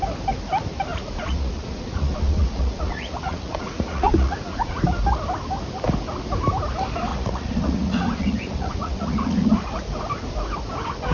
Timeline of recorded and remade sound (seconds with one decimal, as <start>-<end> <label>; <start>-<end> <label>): 0.0-0.9 recorded; 0.9-4.8 remade; 4.8-7.1 recorded; 7.1-9.8 remade; 9.8-11.1 recorded